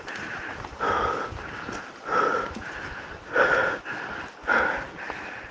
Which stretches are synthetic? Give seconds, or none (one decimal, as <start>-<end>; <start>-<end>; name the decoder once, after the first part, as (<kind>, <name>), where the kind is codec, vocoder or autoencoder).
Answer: none